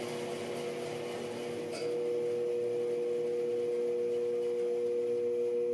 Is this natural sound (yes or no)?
yes